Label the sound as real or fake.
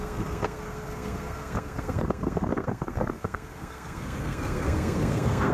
fake